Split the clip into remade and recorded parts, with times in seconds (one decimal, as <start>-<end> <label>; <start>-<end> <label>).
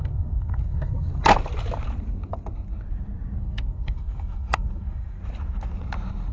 0.0-1.1 remade; 1.1-3.4 recorded; 3.4-5.2 remade; 5.2-6.3 recorded